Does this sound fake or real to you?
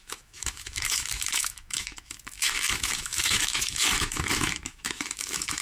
fake